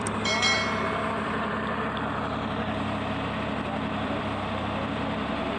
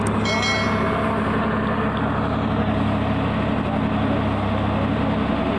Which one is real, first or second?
second